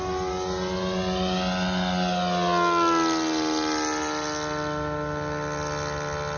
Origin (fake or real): real